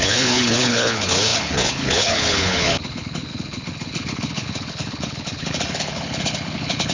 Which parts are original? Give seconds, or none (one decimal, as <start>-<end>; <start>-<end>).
none